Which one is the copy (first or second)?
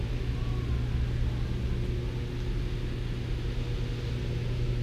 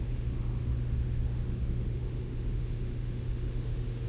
second